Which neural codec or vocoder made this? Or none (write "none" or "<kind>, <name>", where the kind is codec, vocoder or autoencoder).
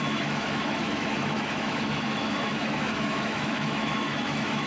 autoencoder, DAC-VAE